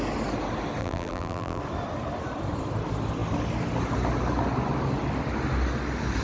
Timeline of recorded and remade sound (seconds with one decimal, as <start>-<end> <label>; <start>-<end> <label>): 0.0-0.8 recorded; 0.8-1.6 remade; 1.6-6.2 recorded